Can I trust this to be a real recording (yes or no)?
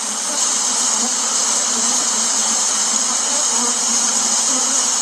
yes